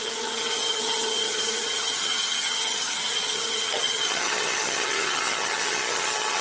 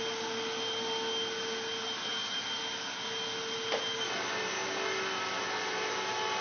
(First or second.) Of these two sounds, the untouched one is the second